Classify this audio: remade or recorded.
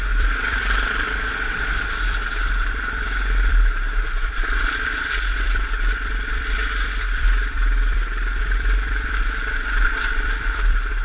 remade